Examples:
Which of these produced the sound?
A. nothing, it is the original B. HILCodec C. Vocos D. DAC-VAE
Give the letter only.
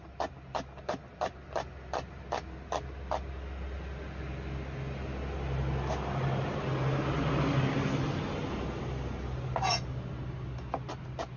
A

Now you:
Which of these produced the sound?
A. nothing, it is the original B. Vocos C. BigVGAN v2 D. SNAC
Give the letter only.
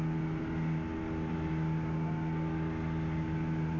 A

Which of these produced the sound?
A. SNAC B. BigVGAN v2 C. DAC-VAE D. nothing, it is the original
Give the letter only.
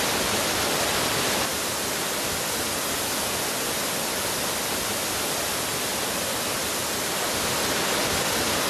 D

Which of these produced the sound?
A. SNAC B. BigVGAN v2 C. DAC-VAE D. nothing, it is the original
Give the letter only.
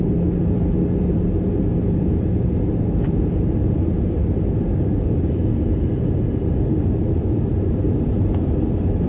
B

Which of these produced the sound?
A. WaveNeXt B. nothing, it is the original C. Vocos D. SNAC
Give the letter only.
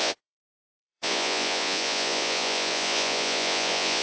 C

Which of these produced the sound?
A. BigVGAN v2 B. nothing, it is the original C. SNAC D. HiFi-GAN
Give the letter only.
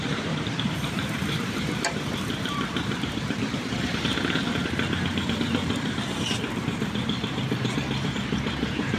A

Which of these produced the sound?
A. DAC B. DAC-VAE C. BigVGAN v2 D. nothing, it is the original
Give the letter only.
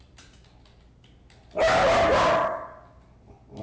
D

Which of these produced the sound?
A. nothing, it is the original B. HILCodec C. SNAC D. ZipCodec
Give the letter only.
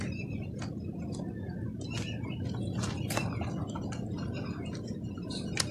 A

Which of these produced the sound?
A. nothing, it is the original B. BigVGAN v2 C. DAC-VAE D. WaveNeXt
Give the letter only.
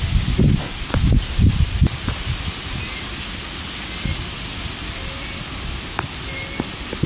A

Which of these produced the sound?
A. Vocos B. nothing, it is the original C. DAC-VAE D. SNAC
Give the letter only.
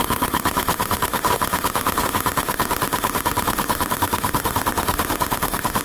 C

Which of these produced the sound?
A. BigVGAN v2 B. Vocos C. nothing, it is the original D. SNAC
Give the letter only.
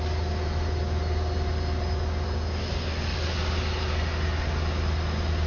C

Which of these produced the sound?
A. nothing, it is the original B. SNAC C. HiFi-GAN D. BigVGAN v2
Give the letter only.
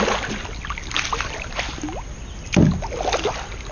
A